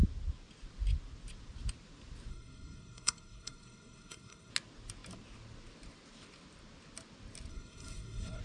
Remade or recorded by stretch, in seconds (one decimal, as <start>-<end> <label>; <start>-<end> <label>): 0.0-2.3 recorded; 2.3-4.5 remade; 4.5-7.5 recorded; 7.5-8.4 remade